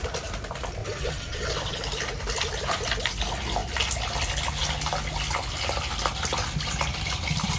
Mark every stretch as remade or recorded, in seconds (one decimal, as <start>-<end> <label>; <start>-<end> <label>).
0.0-0.8 recorded; 0.8-1.8 remade; 1.8-7.6 recorded